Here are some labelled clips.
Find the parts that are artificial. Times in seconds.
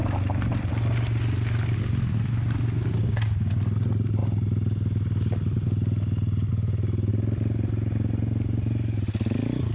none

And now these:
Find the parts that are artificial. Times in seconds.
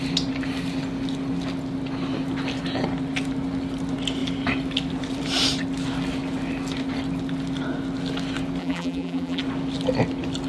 8.6-9.4 (vocoder, BigVGAN v2)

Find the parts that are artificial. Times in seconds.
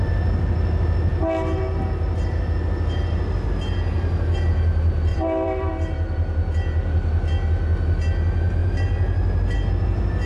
5.1-5.7 (vocoder, BigVGAN v2)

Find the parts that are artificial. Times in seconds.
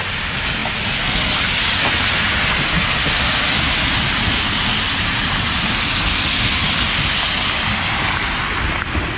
none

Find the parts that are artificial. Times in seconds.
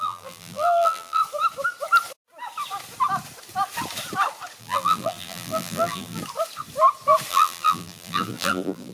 0.0-1.2 (vocoder, BigVGAN v2); 4.6-6.2; 7.3-8.9